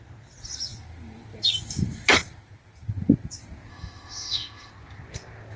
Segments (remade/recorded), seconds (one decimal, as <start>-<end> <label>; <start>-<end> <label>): 0.0-3.7 recorded; 3.7-4.7 remade; 4.7-5.6 recorded